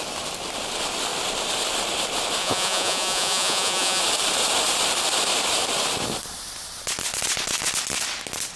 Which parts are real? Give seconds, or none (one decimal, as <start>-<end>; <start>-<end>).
0.0-2.4; 4.0-8.6

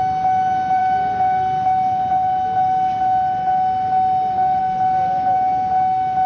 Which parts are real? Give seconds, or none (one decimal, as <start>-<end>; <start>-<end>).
0.0-6.3

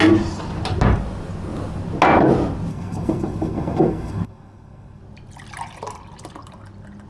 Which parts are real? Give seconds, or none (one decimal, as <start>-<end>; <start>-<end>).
0.0-2.7; 5.0-7.1

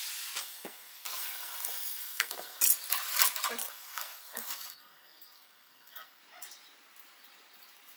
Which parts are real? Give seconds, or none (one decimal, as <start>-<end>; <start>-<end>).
0.0-0.4; 2.6-3.6; 6.2-8.0

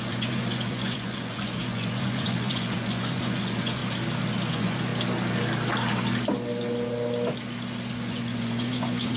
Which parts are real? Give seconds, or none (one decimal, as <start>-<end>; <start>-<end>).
3.8-4.5; 4.9-7.9

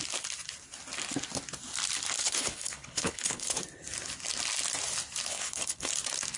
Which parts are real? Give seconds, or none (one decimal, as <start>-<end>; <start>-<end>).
0.0-2.2; 3.6-5.3; 5.9-6.4

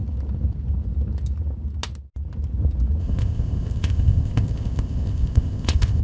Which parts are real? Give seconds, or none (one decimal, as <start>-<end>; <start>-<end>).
0.0-3.0